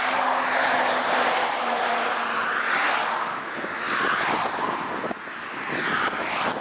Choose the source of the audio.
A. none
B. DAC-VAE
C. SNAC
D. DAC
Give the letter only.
A